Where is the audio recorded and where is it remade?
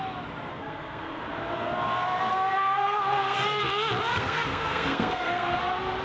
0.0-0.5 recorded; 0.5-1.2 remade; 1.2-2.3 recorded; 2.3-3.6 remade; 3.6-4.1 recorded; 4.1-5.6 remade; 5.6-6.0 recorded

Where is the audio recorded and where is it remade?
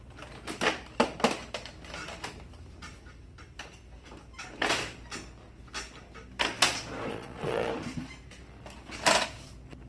0.0-7.1 recorded; 7.1-7.7 remade; 7.7-9.9 recorded